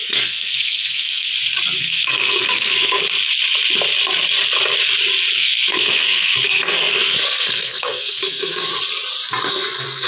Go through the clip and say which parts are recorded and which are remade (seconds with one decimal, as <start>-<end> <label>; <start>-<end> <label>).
0.0-1.3 remade; 1.3-1.8 recorded; 1.8-3.0 remade; 3.0-5.3 recorded; 5.3-8.7 remade; 8.7-9.5 recorded; 9.5-10.1 remade